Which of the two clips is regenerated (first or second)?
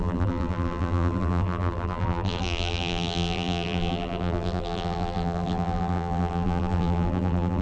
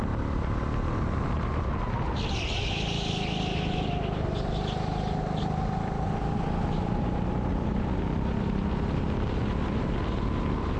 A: first